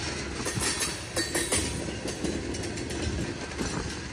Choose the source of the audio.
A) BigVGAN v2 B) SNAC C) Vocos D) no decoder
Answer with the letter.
D